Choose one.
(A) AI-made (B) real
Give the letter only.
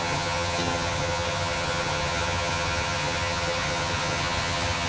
A